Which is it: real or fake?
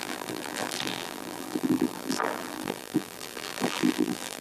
fake